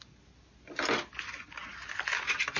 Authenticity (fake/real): real